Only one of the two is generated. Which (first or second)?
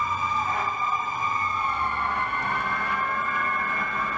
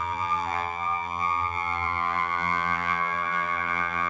second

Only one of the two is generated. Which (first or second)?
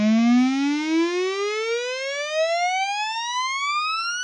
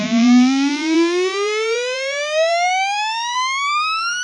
second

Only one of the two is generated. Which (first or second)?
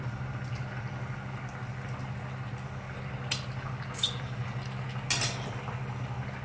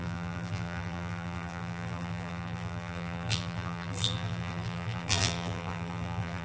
second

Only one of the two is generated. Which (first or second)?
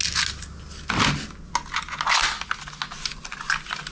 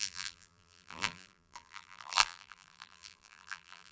second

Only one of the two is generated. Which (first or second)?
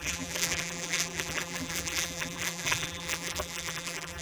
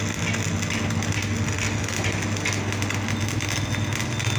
first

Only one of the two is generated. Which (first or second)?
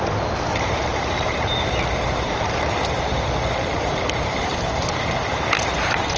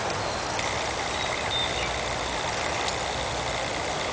first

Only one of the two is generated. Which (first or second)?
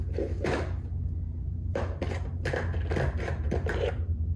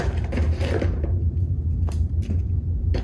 second